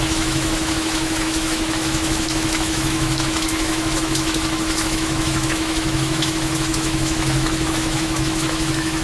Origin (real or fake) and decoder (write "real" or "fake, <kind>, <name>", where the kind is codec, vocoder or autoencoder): fake, autoencoder, DAC-VAE